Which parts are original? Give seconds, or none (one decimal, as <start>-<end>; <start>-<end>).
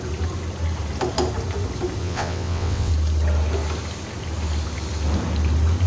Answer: 0.0-2.0; 2.9-5.9